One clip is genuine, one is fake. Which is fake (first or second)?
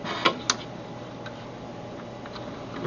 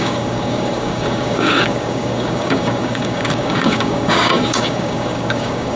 second